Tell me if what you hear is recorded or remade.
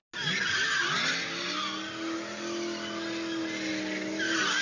recorded